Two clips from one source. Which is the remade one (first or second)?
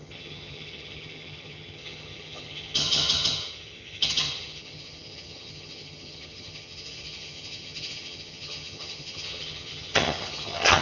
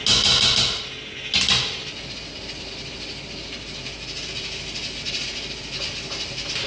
first